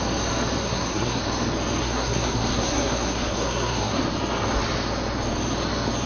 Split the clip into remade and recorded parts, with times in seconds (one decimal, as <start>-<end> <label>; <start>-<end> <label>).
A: 0.0-0.6 recorded; 0.6-1.2 remade; 1.2-1.8 recorded; 1.8-4.0 remade; 4.0-6.1 recorded